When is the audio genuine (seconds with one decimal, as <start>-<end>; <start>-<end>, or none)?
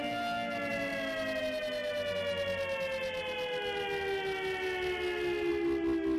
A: 0.0-6.2